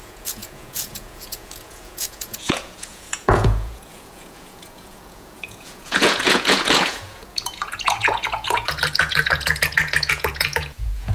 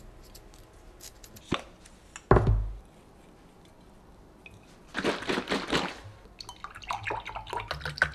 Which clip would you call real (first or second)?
second